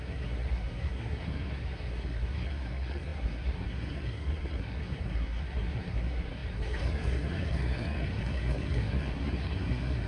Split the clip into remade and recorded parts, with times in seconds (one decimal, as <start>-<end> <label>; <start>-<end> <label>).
0.0-10.1 remade